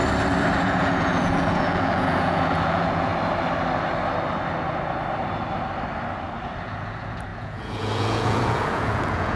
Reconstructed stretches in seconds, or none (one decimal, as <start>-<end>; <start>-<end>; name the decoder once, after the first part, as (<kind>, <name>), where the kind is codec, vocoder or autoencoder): 0.6-3.1 (vocoder, Vocos); 6.6-9.4